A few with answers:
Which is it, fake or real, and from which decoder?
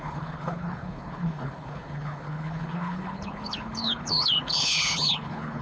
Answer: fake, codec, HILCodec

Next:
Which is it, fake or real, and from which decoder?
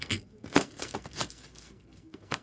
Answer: fake, codec, SNAC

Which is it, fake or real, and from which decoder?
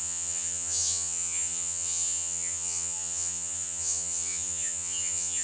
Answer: fake, vocoder, HiFi-GAN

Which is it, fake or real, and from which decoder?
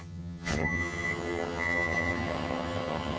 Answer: fake, vocoder, HiFi-GAN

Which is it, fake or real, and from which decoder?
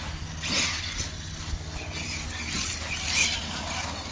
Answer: real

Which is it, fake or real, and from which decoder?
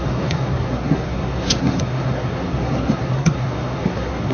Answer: fake, codec, SNAC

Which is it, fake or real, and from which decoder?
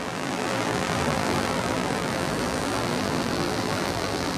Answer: fake, vocoder, BigVGAN v2